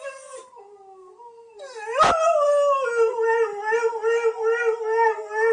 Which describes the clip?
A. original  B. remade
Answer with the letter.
A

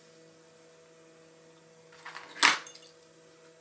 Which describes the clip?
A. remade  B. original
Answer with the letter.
B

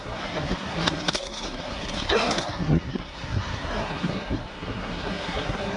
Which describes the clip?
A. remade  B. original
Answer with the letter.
A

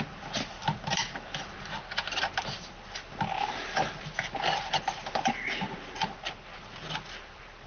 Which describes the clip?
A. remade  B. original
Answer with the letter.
B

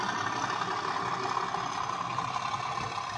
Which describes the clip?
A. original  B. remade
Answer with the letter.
A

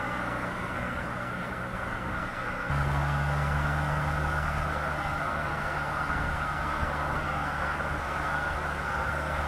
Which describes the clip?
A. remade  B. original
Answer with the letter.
A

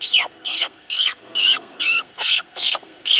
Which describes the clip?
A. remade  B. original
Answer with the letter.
A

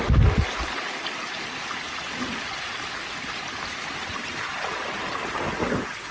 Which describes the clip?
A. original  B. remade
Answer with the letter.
A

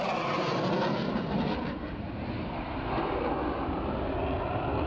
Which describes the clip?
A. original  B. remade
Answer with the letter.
A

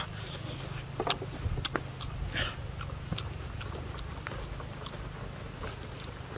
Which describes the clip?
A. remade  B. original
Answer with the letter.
B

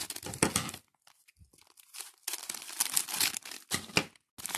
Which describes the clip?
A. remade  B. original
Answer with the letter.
B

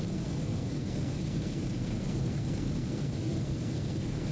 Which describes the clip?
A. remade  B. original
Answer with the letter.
A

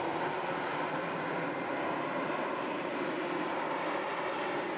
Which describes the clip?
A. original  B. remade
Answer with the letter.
A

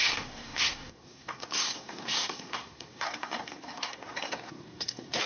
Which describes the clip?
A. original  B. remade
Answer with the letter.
B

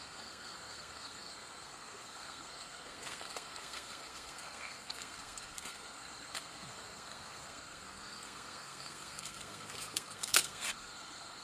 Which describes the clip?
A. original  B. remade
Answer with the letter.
B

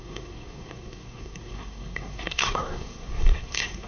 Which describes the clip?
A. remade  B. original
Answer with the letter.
A